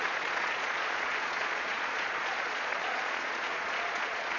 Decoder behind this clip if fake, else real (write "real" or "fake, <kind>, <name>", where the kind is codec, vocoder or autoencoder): fake, vocoder, Vocos